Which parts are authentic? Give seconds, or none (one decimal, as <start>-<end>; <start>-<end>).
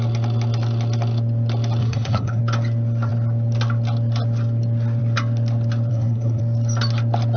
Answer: 0.0-1.8; 2.4-5.9; 6.4-7.4